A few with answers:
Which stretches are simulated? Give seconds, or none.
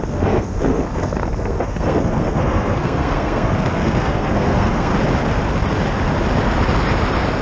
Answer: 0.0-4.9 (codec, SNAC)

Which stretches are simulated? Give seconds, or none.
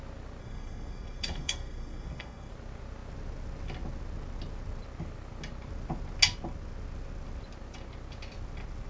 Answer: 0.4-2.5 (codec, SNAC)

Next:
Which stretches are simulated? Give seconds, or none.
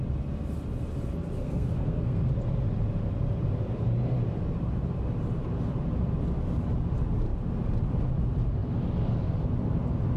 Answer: 1.4-2.3 (codec, SNAC)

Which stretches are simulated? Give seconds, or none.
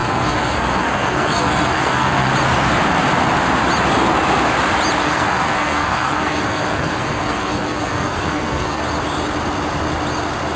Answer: 0.0-2.3 (codec, SNAC); 5.0-8.8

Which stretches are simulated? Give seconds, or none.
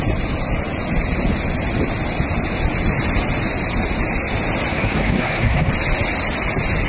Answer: 4.7-5.7 (codec, SNAC)